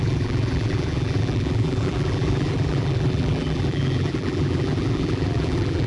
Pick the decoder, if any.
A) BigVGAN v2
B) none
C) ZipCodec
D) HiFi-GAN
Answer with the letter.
A